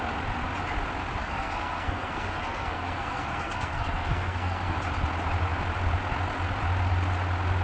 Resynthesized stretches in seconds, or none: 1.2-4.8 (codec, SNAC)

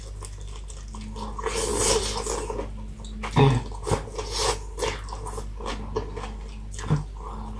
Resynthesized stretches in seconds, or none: none

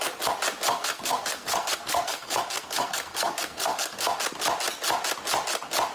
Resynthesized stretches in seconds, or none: 0.7-4.2 (codec, SNAC)

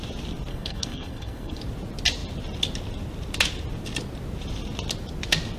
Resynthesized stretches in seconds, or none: 0.5-1.6 (codec, SNAC)

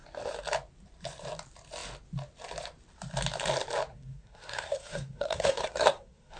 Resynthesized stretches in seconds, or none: 3.9-6.4 (codec, SNAC)